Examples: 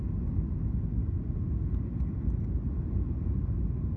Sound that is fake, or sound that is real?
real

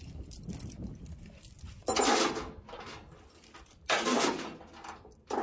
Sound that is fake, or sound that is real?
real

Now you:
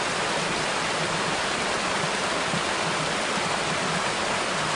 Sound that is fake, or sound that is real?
real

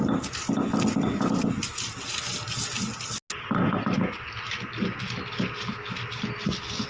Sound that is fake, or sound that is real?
real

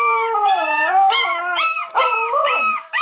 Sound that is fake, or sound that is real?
fake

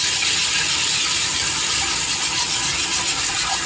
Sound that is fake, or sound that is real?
real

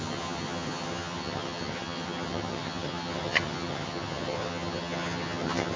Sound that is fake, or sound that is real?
fake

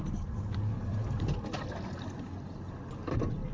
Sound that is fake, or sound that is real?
real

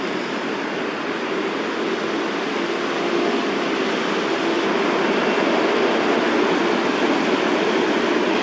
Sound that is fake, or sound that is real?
real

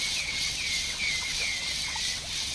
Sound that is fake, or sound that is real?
fake